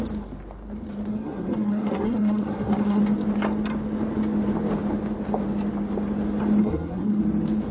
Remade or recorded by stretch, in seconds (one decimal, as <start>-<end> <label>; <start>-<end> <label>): 0.0-1.1 recorded; 1.1-3.0 remade; 3.0-6.6 recorded; 6.6-7.2 remade; 7.2-7.7 recorded

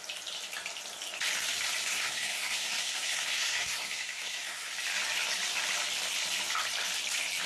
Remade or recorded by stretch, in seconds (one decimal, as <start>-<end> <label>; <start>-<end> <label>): 0.0-1.9 recorded; 1.9-4.7 remade; 4.7-7.5 recorded